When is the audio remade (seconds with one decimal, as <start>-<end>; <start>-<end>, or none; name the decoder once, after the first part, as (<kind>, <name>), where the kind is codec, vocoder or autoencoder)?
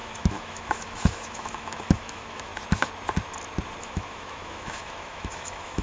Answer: 0.0-2.5 (autoencoder, DAC-VAE); 3.8-5.8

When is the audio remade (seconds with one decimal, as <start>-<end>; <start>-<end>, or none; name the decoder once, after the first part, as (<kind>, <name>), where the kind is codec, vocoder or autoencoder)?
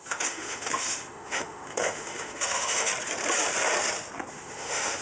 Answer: 0.0-2.9 (autoencoder, DAC-VAE); 4.3-5.0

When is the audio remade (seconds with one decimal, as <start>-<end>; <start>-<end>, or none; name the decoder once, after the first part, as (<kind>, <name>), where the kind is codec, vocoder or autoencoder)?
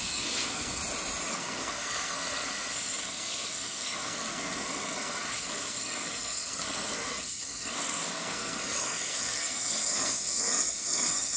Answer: 0.0-0.8 (codec, SNAC); 1.3-11.4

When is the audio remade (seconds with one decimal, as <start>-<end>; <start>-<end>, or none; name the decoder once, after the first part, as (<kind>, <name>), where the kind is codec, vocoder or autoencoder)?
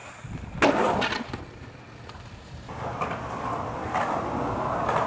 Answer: none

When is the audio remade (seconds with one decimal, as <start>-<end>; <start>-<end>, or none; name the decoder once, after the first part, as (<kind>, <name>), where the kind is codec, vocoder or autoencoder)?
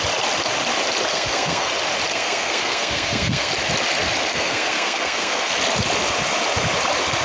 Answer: 1.1-1.7 (codec, SNAC); 2.1-3.5; 4.3-5.5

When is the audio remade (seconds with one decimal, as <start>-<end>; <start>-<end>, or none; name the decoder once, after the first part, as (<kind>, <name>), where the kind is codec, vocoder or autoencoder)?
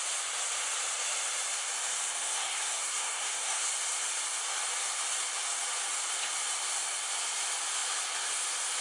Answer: 2.2-3.7 (codec, SNAC)